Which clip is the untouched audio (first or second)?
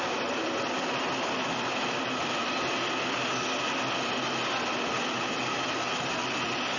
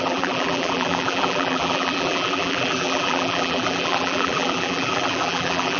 first